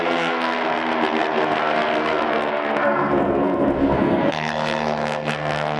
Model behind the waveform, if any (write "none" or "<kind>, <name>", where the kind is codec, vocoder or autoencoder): codec, SNAC